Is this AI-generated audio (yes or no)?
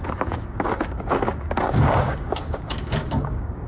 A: yes